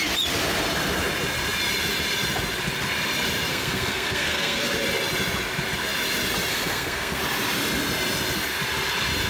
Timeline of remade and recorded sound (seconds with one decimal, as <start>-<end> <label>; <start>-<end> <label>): 0.0-3.5 recorded; 3.5-4.6 remade; 4.6-6.5 recorded; 6.5-7.2 remade; 7.2-9.3 recorded